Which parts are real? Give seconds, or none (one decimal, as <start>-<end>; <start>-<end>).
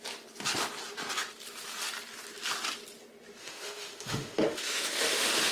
0.0-3.4